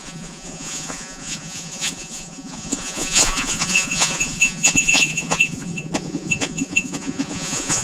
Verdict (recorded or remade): remade